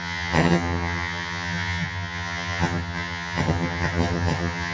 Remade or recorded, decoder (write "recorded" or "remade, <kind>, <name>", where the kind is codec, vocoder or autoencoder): remade, vocoder, HiFi-GAN